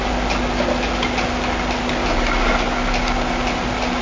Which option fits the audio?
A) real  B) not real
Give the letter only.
A